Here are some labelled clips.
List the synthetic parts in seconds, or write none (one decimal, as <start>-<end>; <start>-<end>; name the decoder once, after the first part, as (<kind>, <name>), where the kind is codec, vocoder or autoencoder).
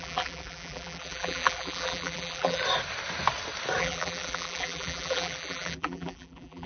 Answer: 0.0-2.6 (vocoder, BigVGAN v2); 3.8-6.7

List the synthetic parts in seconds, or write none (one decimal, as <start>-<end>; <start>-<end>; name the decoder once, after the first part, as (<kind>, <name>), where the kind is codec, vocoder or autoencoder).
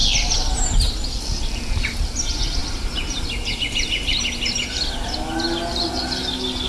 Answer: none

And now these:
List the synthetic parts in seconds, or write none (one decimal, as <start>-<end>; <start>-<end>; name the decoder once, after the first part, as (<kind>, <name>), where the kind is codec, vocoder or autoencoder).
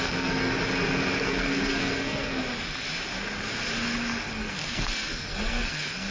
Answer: 0.0-0.5 (codec, SNAC); 1.2-2.4; 4.4-6.1